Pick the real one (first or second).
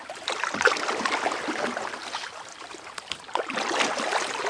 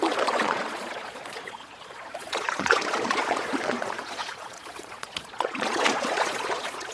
first